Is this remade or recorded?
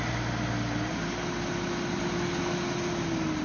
recorded